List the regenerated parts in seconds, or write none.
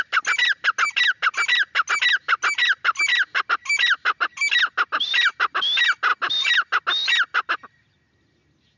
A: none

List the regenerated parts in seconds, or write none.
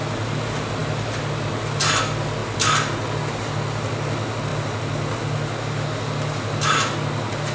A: none